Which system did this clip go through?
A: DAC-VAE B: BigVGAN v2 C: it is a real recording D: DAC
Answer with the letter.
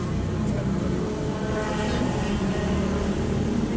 C